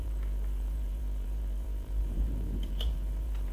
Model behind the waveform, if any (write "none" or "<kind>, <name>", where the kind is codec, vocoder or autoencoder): vocoder, BigVGAN v2